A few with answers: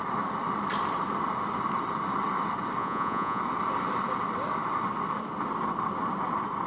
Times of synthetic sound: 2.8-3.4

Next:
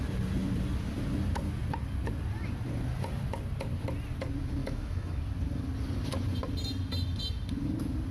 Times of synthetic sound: 4.6-5.2

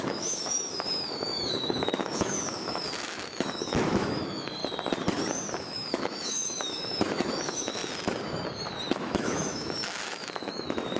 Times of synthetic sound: 0.0-4.6; 5.6-7.8; 9.0-11.0